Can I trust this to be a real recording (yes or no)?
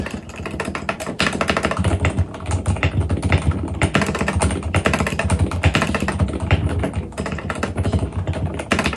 yes